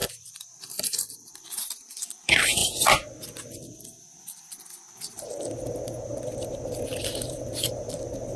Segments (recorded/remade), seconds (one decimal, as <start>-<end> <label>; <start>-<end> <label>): 0.0-1.1 remade; 1.1-8.4 recorded